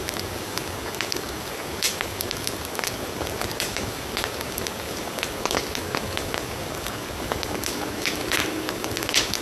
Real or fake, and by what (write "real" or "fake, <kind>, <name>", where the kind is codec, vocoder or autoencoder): fake, codec, DAC